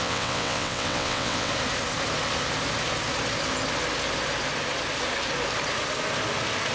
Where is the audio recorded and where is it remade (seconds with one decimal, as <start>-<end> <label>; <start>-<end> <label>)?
0.0-1.5 remade; 1.5-6.7 recorded